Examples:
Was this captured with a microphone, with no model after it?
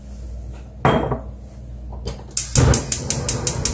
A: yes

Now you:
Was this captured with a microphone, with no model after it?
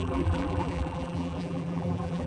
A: no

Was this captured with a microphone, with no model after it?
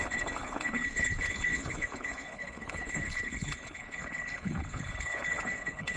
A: no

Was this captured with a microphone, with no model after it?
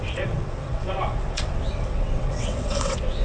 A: no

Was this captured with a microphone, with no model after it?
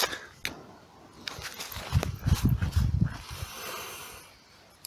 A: yes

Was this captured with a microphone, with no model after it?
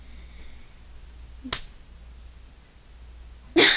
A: yes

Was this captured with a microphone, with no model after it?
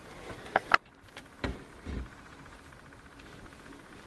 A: yes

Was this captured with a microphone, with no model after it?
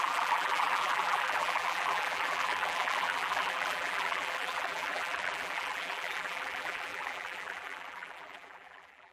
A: no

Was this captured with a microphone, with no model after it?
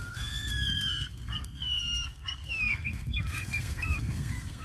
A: no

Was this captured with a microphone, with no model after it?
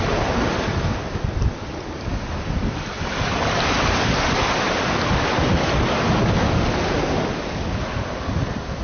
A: yes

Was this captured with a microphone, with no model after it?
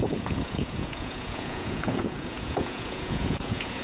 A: no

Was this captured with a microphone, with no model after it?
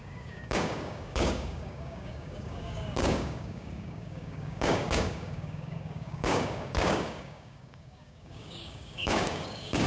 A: no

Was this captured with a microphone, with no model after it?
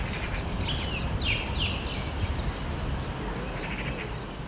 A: yes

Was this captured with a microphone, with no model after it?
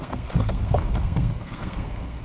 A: no